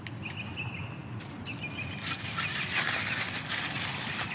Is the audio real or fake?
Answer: real